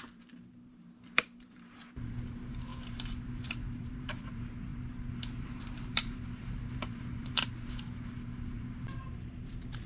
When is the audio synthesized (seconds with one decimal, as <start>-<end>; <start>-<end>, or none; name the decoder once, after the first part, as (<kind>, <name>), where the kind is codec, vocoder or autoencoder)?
0.0-9.9 (vocoder, BigVGAN v2)